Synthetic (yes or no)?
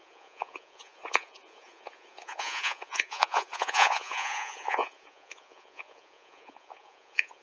yes